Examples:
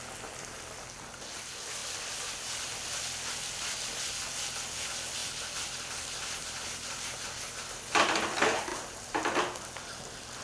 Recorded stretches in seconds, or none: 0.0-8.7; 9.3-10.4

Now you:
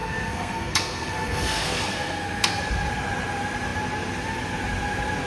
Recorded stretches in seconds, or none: 2.6-5.3

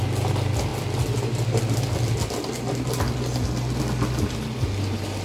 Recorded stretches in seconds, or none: 0.0-5.2

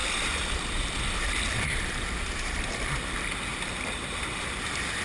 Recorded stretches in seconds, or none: 3.0-3.5

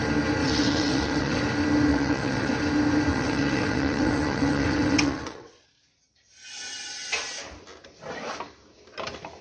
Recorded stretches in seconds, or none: 0.0-0.4; 1.4-1.9; 2.5-3.1; 5.7-9.4

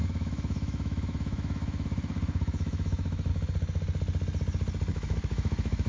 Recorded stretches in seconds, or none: 3.3-4.9

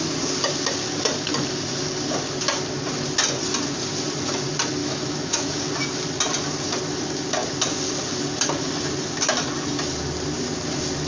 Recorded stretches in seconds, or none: 0.0-4.8; 5.6-11.1

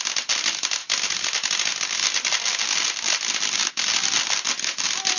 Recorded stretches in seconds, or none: 0.0-5.2